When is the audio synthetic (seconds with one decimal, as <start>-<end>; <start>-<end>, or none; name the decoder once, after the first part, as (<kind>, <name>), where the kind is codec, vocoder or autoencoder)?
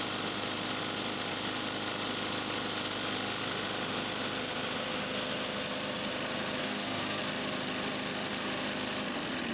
6.6-7.2 (codec, SNAC)